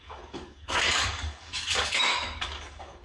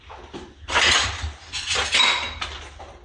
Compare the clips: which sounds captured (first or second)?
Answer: second